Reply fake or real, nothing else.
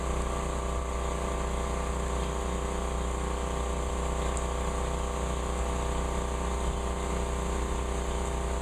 real